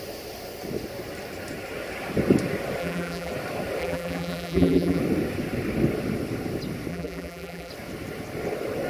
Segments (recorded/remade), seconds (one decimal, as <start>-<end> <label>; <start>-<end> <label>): 0.0-2.8 recorded; 2.8-3.3 remade; 3.3-3.8 recorded; 3.8-5.0 remade; 5.0-6.9 recorded; 6.9-7.7 remade; 7.7-8.9 recorded